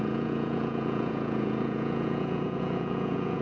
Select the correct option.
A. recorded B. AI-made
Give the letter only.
B